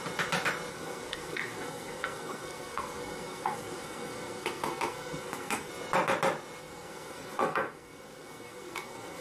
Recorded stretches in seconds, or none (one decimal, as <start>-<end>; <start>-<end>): 0.0-0.7; 5.7-6.6